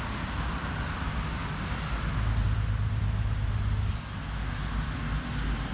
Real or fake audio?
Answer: real